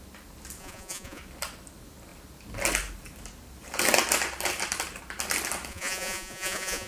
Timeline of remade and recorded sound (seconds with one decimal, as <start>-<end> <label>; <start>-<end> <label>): 0.0-0.6 recorded; 0.6-1.2 remade; 1.2-5.7 recorded; 5.7-6.9 remade